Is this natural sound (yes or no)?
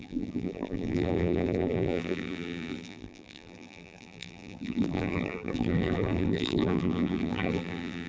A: no